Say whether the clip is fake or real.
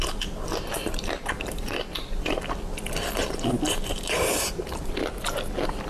real